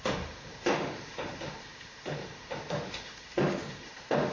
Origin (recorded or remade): remade